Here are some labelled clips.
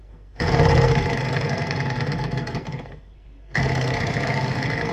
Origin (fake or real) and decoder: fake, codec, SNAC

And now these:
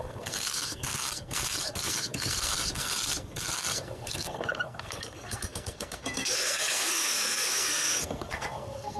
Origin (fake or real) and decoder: fake, codec, SNAC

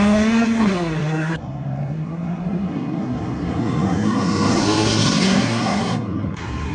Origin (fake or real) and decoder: fake, codec, SNAC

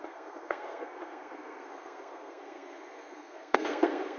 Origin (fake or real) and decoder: fake, codec, SNAC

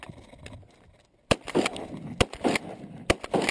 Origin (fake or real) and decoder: real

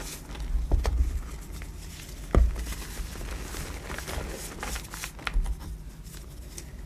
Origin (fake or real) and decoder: real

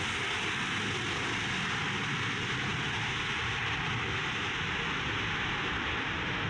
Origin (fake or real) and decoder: real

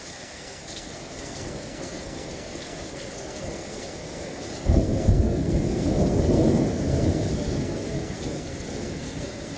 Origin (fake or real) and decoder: fake, codec, SNAC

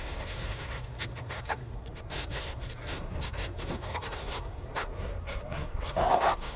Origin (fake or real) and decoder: fake, codec, SNAC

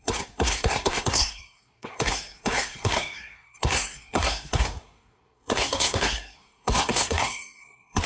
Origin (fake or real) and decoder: fake, codec, SNAC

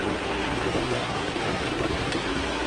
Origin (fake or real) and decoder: fake, codec, SNAC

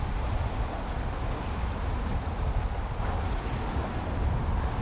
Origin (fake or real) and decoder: real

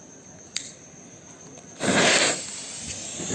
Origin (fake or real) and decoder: real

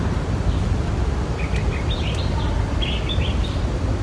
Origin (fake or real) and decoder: real